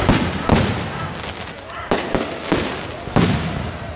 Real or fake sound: real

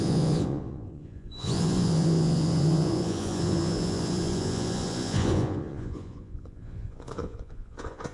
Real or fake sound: fake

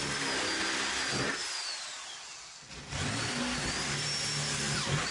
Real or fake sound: real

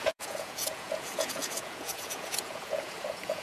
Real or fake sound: fake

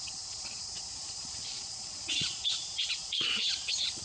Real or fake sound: fake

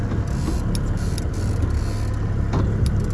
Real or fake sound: real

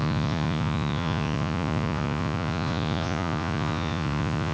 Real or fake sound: fake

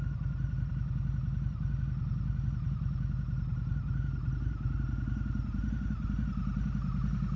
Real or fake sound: real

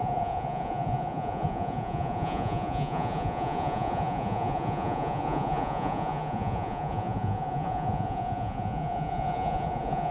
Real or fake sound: fake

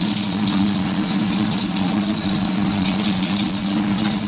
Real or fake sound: fake